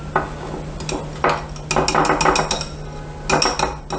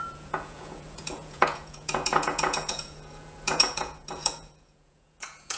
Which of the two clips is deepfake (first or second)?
second